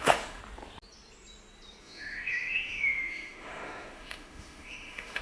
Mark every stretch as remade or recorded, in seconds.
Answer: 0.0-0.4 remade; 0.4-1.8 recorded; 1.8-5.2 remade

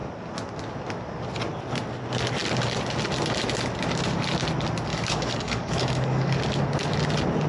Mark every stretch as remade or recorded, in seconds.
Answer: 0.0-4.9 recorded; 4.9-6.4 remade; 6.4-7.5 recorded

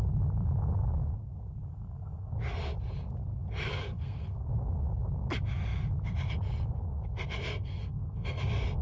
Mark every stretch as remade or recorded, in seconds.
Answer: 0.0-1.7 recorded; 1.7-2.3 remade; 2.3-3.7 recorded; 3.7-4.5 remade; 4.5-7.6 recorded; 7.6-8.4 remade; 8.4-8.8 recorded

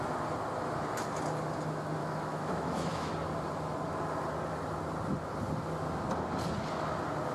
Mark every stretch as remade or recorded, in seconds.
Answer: 0.0-2.0 recorded; 2.0-3.1 remade; 3.1-7.3 recorded

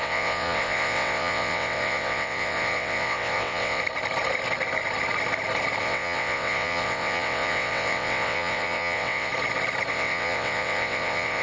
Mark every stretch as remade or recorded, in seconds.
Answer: 0.0-3.8 remade; 3.8-5.8 recorded; 5.8-9.3 remade; 9.3-9.9 recorded; 9.9-11.4 remade

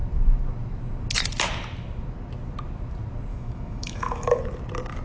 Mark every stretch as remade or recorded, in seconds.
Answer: 0.0-3.3 recorded; 3.3-4.4 remade; 4.4-5.0 recorded